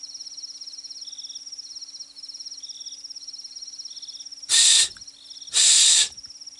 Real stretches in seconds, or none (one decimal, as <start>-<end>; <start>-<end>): 0.0-6.6